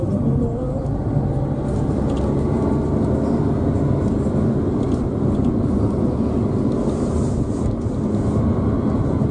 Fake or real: real